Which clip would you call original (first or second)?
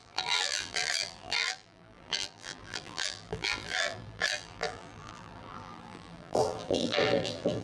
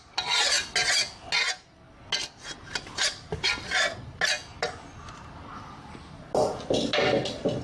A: second